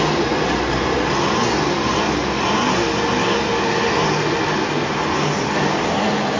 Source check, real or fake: real